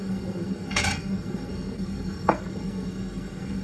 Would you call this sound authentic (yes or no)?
no